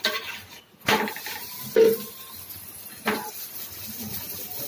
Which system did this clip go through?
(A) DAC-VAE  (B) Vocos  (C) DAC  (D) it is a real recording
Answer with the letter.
D